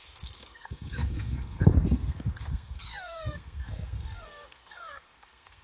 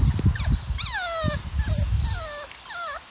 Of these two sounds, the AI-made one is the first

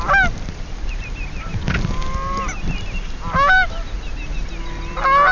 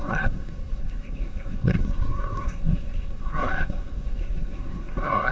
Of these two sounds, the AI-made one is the second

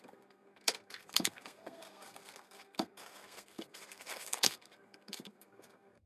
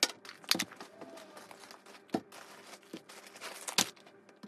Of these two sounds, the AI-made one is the first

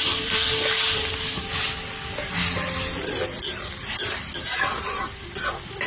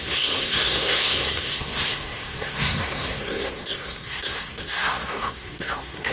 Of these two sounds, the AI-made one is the second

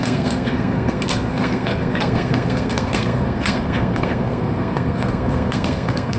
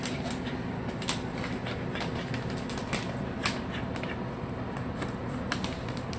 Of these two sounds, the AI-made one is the first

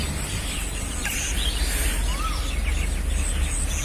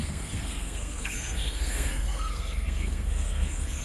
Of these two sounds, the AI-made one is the second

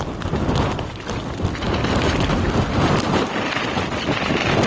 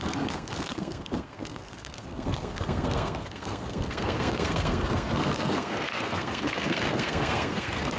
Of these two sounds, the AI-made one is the second